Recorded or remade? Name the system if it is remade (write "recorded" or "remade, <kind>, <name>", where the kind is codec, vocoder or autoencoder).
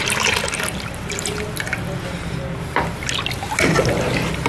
recorded